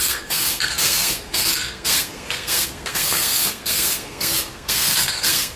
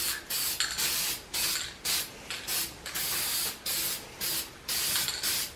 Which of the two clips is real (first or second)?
second